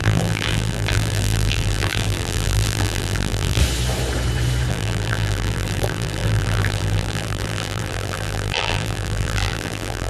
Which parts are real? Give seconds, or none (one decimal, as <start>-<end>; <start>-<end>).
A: 3.6-4.7